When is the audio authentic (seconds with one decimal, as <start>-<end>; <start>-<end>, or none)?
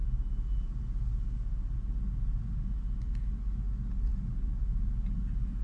0.0-5.6